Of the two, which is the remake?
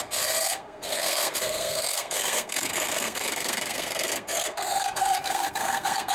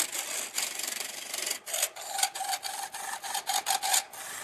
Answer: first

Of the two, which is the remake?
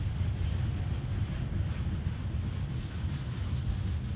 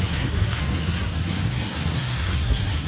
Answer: second